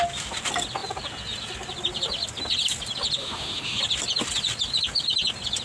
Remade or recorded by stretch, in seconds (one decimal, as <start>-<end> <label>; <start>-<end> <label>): 0.0-3.2 recorded; 3.2-3.8 remade; 3.8-5.6 recorded